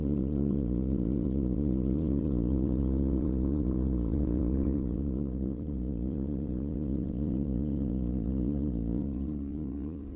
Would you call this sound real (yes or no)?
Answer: no